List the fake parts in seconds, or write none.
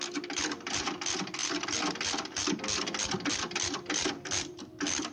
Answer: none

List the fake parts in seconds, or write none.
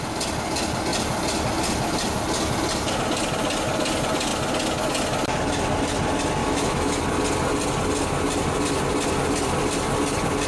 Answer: 6.4-7.0 (autoencoder, DAC-VAE)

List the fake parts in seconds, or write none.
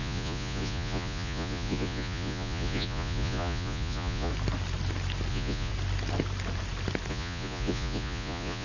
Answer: 0.0-4.3 (vocoder, Vocos); 5.3-5.7; 7.1-8.6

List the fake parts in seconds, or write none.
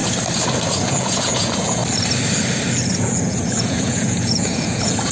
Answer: 0.8-1.8 (vocoder, Vocos); 3.0-5.1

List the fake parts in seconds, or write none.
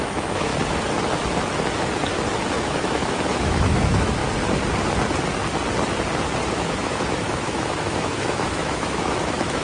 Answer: 0.0-0.5 (autoencoder, DAC-VAE); 2.5-4.2; 6.6-9.6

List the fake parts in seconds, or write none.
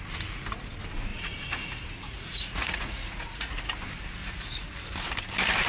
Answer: 1.1-3.6 (vocoder, Vocos); 4.2-4.7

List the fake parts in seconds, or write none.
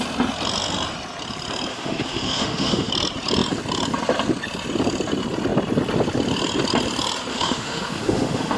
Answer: 1.7-2.9 (autoencoder, DAC-VAE); 7.3-8.6